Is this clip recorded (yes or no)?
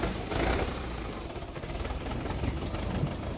yes